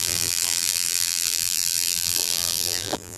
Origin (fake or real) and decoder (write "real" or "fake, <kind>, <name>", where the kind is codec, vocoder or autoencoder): fake, vocoder, BigVGAN v2